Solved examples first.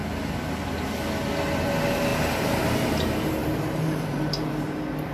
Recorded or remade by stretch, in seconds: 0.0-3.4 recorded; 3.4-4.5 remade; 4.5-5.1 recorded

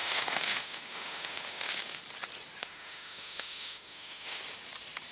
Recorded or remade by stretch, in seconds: 0.0-2.0 remade; 2.0-2.6 recorded; 2.6-4.4 remade; 4.4-5.1 recorded

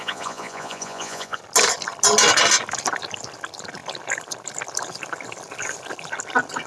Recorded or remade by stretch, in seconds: 0.0-1.4 remade; 1.4-6.7 recorded

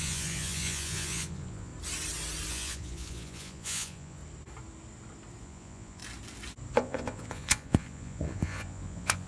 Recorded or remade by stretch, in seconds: 0.0-1.7 remade; 1.7-2.5 recorded; 2.5-4.2 remade; 4.2-5.4 recorded; 5.4-6.0 remade; 6.0-6.7 recorded; 6.7-9.3 remade

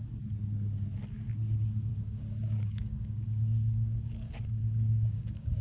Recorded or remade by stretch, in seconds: 0.0-1.9 recorded; 1.9-5.6 remade

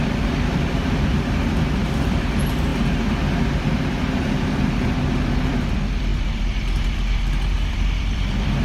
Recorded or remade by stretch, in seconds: 0.0-2.7 remade; 2.7-3.5 recorded; 3.5-8.6 remade

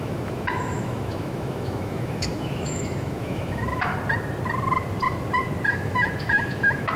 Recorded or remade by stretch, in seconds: 0.0-3.9 remade; 3.9-5.7 recorded; 5.7-7.0 remade

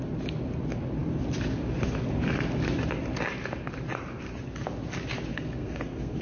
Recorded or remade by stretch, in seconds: 0.0-5.3 recorded; 5.3-6.2 remade